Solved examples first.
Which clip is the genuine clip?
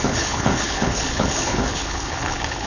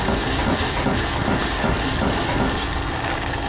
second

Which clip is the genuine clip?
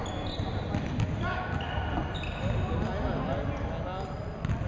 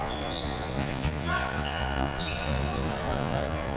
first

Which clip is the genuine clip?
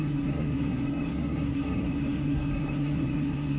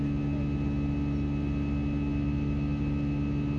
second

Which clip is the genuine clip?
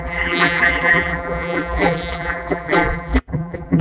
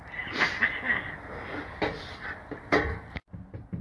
second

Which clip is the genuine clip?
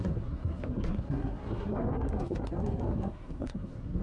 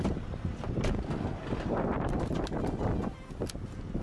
second